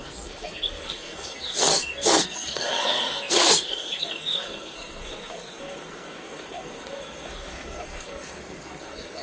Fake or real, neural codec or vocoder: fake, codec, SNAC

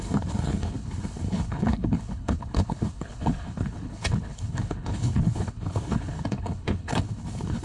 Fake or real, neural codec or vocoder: fake, codec, HILCodec